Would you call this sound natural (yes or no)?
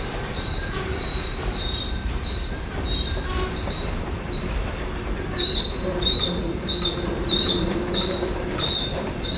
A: no